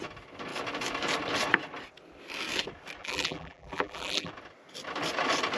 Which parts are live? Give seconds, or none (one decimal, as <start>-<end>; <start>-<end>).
0.0-3.0; 4.3-5.6